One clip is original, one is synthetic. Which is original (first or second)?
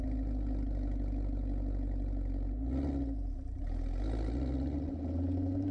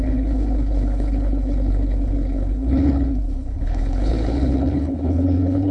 first